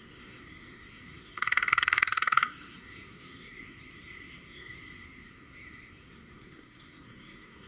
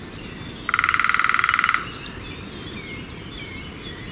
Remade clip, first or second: first